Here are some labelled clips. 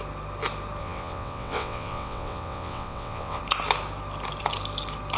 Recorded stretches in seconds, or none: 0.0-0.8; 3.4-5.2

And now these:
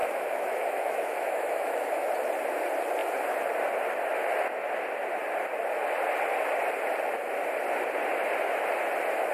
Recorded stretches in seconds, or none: 2.1-9.3